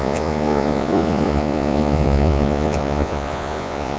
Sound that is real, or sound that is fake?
fake